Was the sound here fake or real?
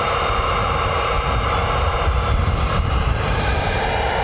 fake